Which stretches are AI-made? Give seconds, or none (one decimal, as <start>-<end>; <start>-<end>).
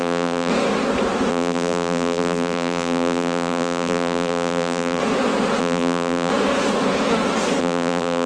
0.0-0.5; 1.3-5.0; 5.6-6.3; 7.6-8.3